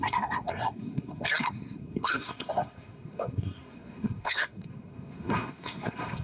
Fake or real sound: fake